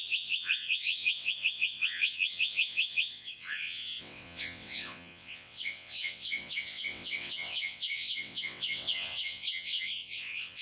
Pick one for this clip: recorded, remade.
remade